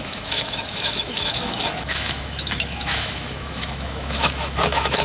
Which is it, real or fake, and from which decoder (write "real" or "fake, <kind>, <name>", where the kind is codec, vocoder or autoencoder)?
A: fake, autoencoder, DAC-VAE